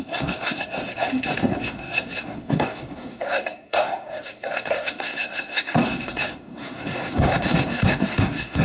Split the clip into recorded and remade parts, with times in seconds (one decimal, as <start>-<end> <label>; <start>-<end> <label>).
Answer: 0.0-8.6 remade